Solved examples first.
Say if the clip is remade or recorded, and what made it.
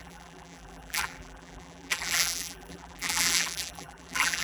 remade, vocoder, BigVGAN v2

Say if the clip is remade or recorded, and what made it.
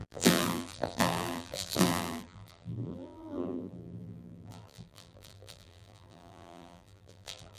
remade, vocoder, BigVGAN v2